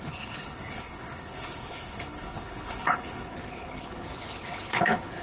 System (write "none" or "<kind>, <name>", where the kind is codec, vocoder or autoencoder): codec, HILCodec